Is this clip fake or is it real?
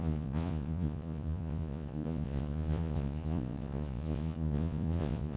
fake